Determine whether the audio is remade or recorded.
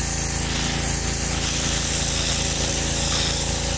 recorded